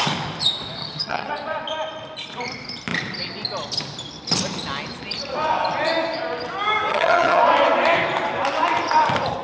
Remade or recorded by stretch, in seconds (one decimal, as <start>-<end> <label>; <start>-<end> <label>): 0.0-0.8 recorded; 0.8-1.3 remade; 1.3-6.9 recorded; 6.9-7.4 remade; 7.4-9.4 recorded

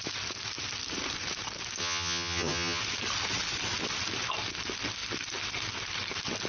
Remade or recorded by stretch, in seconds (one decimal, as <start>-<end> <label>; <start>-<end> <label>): 0.0-1.8 recorded; 1.8-2.8 remade; 2.8-6.5 recorded

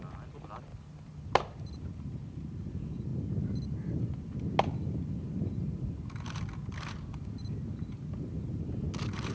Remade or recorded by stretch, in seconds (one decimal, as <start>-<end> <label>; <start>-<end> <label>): 0.0-9.3 recorded

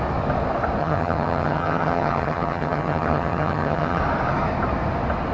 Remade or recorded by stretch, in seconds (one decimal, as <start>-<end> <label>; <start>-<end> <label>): 0.0-0.8 recorded; 0.8-4.0 remade; 4.0-5.3 recorded